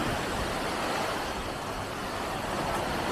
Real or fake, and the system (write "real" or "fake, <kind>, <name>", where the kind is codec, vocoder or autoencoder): real